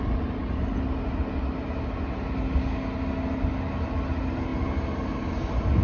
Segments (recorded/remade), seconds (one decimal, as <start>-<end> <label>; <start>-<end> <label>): 0.0-5.8 recorded